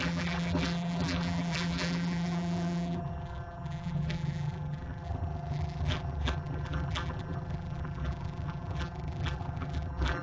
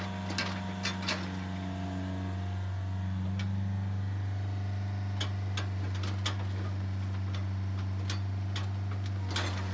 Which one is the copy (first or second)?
first